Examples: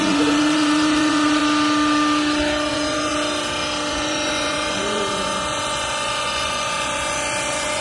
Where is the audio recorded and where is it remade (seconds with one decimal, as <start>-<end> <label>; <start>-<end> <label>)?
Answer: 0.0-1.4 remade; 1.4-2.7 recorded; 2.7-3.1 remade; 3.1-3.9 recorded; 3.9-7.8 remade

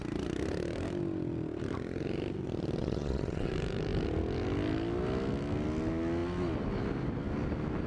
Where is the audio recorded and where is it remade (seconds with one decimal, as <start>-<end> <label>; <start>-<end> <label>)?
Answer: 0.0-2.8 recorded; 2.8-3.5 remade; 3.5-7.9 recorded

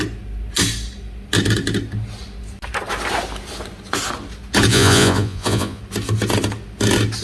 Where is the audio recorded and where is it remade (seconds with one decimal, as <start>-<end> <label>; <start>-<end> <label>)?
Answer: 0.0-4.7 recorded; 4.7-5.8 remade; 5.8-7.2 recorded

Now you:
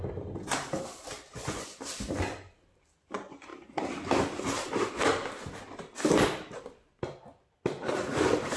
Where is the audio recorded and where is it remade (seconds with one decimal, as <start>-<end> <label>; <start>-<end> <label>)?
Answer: 0.0-1.3 recorded; 1.3-1.8 remade; 1.8-8.6 recorded

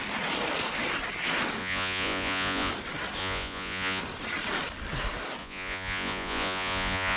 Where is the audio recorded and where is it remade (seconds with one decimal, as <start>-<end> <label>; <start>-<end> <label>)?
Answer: 0.0-1.6 recorded; 1.6-2.7 remade; 2.7-3.2 recorded; 3.2-4.0 remade; 4.0-5.4 recorded; 5.4-7.2 remade

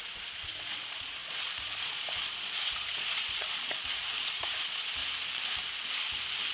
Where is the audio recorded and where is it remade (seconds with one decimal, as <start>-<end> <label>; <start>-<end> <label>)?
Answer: 0.0-5.0 remade; 5.0-6.5 recorded

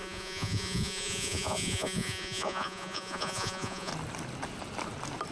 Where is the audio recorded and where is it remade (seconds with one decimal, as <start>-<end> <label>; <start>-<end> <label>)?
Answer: 0.0-3.9 remade; 3.9-5.3 recorded